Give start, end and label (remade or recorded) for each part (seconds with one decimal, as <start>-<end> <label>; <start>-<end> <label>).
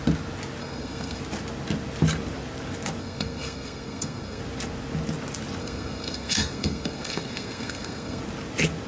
0.0-0.6 recorded; 0.6-1.2 remade; 1.2-3.0 recorded; 3.0-4.4 remade; 4.4-5.6 recorded; 5.6-8.2 remade; 8.2-8.9 recorded